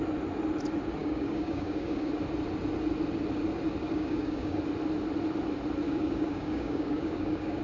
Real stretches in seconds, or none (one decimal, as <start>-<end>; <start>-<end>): 0.0-1.0; 2.1-3.8; 4.6-5.8